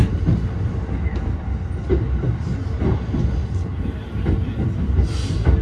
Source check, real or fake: real